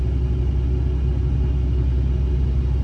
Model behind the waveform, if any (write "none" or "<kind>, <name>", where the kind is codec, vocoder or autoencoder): none